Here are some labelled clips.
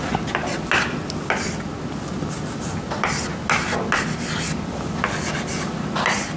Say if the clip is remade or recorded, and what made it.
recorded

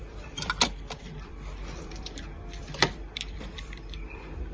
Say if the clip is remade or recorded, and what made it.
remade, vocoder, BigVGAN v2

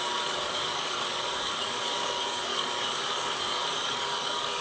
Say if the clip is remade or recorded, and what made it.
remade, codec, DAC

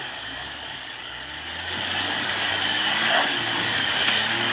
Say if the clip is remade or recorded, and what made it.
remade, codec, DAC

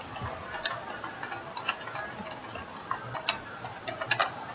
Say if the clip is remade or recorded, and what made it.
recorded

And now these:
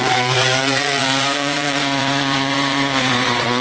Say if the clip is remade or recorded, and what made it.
remade, vocoder, Vocos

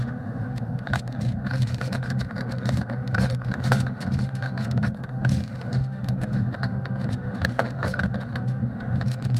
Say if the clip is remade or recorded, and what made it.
remade, autoencoder, DAC-VAE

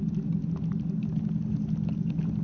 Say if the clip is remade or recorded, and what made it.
recorded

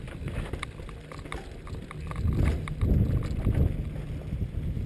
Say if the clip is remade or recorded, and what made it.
recorded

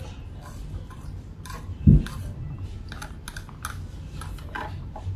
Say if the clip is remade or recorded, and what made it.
recorded